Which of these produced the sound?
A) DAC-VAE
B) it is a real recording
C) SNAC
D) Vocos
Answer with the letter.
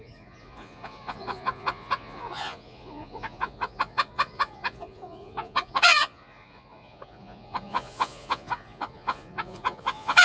D